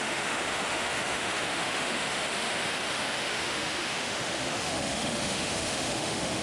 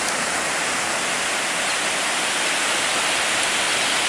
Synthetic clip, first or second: first